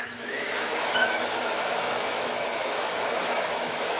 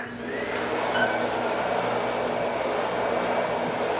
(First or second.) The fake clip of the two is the first